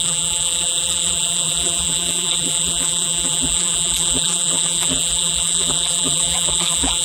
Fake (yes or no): yes